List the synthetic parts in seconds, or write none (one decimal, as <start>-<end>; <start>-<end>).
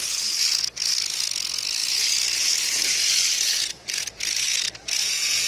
0.0-5.5